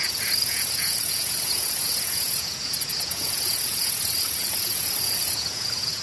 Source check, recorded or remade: remade